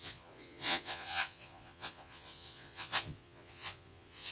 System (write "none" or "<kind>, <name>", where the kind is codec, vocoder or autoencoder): vocoder, Vocos